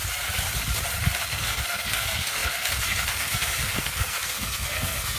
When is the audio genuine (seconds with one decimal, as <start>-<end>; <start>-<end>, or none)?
0.0-1.2

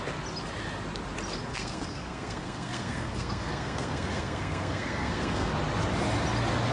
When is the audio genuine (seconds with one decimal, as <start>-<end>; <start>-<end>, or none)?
0.0-1.5; 5.5-6.7